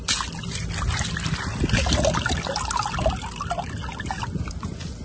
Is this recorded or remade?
recorded